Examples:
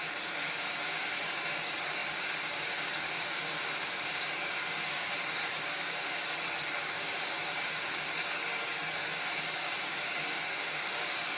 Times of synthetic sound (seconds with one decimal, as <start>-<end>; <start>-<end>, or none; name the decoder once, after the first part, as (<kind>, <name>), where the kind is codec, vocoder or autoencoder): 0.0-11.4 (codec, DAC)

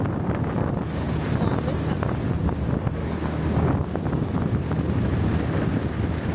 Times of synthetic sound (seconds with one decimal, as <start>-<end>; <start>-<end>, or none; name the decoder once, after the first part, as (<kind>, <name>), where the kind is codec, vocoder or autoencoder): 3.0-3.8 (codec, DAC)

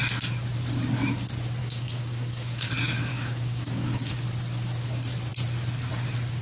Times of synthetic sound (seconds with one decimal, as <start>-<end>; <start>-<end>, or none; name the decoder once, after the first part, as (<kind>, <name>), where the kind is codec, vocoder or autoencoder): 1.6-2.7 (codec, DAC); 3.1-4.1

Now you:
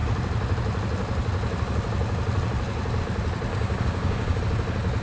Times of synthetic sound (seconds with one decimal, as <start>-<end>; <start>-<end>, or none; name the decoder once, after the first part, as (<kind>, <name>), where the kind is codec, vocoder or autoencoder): 3.5-4.4 (codec, DAC)

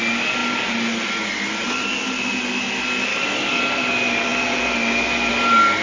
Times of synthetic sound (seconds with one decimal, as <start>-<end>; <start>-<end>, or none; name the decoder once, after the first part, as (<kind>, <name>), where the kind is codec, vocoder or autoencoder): 3.1-3.6 (codec, DAC)

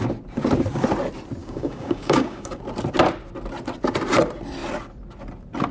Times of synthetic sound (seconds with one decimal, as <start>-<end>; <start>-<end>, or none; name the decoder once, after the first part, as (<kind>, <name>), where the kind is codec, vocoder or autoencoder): 1.4-2.6 (codec, DAC)

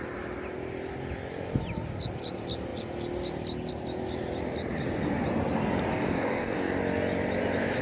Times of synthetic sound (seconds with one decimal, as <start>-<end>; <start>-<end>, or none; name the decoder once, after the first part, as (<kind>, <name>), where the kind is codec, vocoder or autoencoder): 6.0-6.8 (codec, DAC)

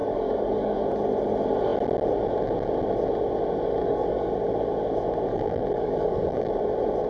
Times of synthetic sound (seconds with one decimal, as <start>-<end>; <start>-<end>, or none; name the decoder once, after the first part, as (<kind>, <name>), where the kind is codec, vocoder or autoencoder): 0.0-0.8 (codec, DAC); 3.8-4.3; 5.3-6.6